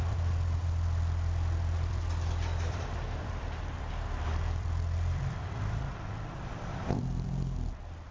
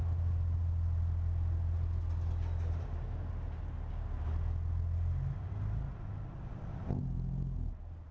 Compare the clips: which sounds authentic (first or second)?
second